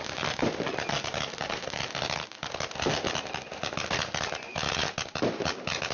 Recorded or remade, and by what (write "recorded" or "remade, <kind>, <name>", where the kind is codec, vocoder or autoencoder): recorded